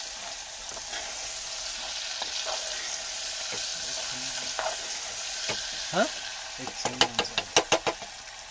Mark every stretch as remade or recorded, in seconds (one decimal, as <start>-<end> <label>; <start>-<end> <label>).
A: 0.0-8.5 recorded